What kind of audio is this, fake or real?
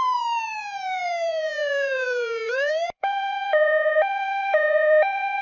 fake